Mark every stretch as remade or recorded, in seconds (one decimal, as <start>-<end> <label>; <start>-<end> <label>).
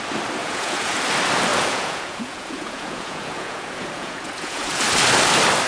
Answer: 0.0-0.4 recorded; 0.4-1.0 remade; 1.0-1.5 recorded; 1.5-4.8 remade; 4.8-5.7 recorded